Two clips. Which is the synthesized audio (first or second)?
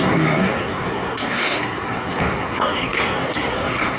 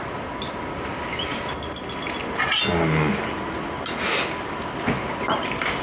first